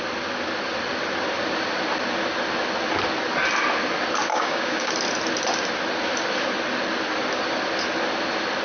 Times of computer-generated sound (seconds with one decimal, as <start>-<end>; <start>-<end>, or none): 4.3-4.9